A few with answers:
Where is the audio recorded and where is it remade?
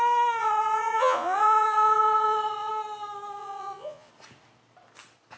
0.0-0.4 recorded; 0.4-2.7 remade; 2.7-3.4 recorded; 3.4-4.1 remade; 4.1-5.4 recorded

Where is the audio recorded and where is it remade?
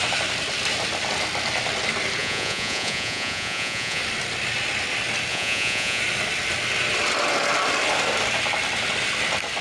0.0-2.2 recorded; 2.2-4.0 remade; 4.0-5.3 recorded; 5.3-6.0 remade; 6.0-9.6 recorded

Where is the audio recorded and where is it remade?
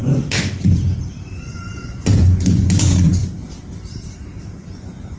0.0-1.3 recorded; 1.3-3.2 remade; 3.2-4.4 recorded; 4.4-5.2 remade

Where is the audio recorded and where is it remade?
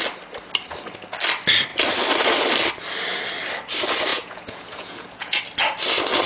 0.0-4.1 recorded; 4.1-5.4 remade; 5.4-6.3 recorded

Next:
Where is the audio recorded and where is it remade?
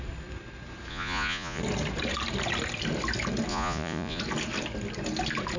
0.0-0.9 recorded; 0.9-1.6 remade; 1.6-3.5 recorded; 3.5-4.2 remade; 4.2-5.6 recorded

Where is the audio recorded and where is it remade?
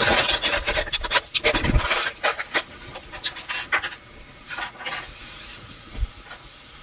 0.0-0.6 remade; 0.6-4.4 recorded; 4.4-6.8 remade